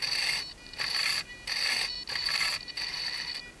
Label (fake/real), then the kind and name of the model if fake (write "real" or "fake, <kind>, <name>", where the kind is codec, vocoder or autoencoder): real